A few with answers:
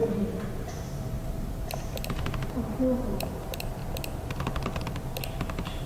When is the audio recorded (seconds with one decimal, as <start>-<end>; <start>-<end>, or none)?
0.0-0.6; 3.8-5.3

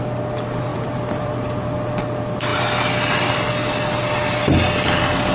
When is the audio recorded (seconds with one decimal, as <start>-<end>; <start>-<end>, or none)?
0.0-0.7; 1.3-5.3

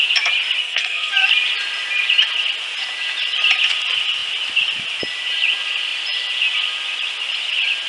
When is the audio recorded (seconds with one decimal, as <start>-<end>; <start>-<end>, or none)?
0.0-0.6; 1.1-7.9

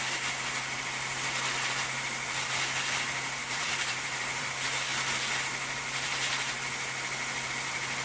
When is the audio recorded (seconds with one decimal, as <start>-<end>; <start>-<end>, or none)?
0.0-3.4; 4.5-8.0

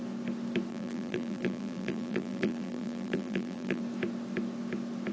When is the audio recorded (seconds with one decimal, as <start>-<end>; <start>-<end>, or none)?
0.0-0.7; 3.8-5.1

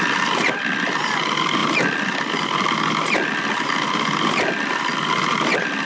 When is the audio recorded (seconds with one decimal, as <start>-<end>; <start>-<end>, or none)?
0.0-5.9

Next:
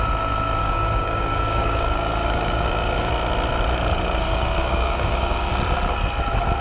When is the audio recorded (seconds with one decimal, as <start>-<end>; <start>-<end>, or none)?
0.0-0.6; 3.1-4.2; 5.5-6.6